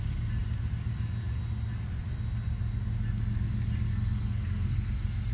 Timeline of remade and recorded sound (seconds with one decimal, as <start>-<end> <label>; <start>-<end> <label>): 0.0-3.9 recorded; 3.9-5.3 remade